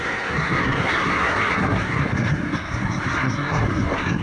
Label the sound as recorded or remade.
remade